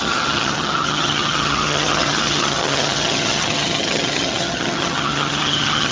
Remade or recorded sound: remade